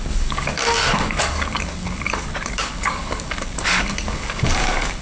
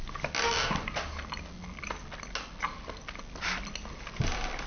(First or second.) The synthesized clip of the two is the first